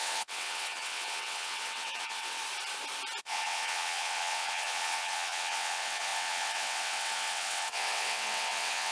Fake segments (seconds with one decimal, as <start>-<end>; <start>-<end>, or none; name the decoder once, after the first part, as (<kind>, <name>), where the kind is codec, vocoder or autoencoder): 0.0-2.4 (vocoder, WaveNeXt); 3.2-8.9